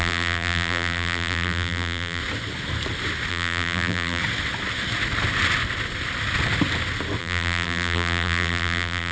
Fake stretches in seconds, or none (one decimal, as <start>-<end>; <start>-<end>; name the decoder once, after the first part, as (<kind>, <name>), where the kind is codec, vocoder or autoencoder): 0.0-2.2 (vocoder, BigVGAN v2); 3.3-4.2; 7.2-9.1